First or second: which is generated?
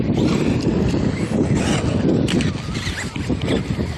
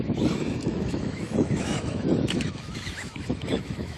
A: second